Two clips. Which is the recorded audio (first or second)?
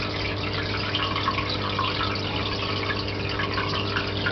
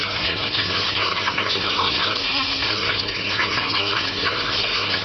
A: first